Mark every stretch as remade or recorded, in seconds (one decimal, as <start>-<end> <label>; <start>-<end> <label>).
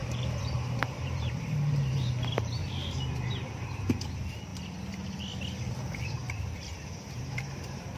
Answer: 0.0-2.6 remade; 2.6-3.1 recorded; 3.1-4.5 remade; 4.5-5.7 recorded; 5.7-8.0 remade